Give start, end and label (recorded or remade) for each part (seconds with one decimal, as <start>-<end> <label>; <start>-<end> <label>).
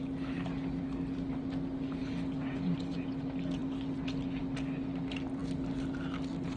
0.0-6.6 recorded